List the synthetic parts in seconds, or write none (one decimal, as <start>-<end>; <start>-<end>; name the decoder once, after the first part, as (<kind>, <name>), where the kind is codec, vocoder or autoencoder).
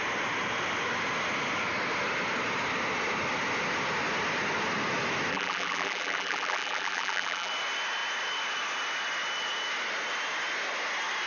5.3-7.5 (vocoder, BigVGAN v2)